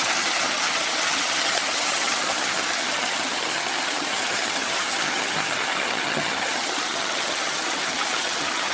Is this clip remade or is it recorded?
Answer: remade